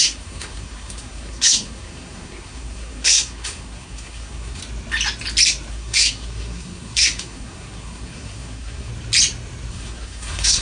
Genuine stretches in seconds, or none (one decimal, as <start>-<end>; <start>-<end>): 4.6-5.7; 8.9-9.7